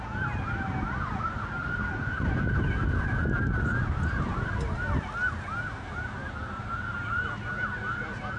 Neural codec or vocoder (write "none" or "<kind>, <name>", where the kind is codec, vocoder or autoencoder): none